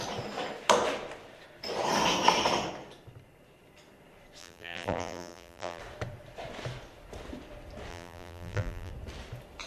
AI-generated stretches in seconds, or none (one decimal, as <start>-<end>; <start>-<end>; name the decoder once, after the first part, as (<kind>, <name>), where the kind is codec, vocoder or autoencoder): 4.4-5.8 (vocoder, BigVGAN v2); 7.9-8.9